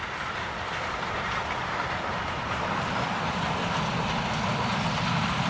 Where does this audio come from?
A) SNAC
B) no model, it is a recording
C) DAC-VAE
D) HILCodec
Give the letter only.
B